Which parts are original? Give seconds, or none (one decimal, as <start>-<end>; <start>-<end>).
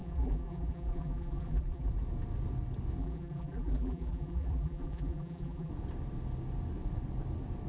1.9-3.0; 5.7-7.7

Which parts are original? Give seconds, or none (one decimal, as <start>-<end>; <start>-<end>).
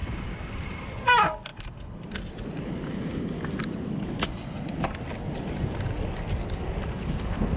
0.8-7.6